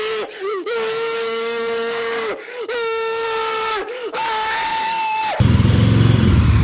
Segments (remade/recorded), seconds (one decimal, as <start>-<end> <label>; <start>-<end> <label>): 0.0-0.5 recorded; 0.5-4.2 remade; 4.2-4.7 recorded; 4.7-5.2 remade; 5.2-6.6 recorded